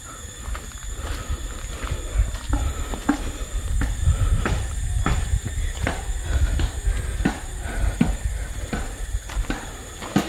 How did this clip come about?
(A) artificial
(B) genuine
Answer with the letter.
B